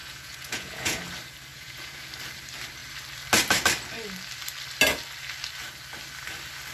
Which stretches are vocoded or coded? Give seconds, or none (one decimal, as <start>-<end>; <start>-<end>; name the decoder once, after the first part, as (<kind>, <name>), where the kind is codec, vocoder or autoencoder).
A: 0.0-1.0 (vocoder, Vocos); 1.5-2.1